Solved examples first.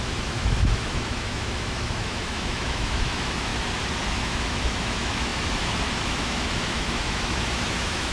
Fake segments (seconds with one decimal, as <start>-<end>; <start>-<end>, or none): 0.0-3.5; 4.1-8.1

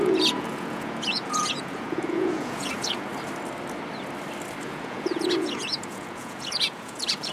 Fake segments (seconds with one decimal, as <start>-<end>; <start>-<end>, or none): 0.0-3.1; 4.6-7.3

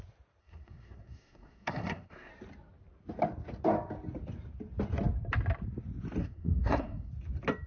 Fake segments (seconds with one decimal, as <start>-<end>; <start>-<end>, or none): 0.4-2.3; 6.2-7.1

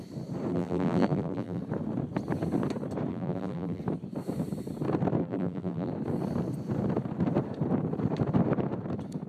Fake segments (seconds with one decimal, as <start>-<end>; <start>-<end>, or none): 0.5-1.6; 3.1-3.8; 5.2-5.9

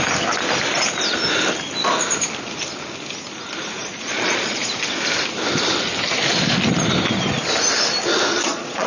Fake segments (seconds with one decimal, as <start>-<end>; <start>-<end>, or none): 3.9-4.7; 8.3-8.9